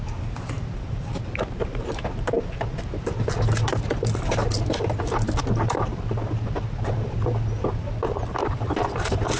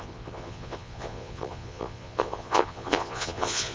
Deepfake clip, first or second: second